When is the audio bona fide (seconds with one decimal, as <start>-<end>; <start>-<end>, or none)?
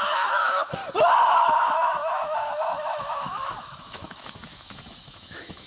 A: 0.8-1.6